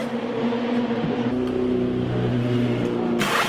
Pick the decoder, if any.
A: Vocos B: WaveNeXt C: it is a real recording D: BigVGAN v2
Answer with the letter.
C